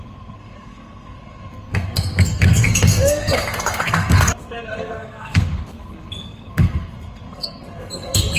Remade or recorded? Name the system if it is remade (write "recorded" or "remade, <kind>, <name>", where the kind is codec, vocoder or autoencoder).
remade, codec, SNAC